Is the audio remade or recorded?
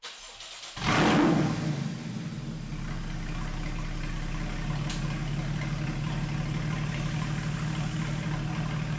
recorded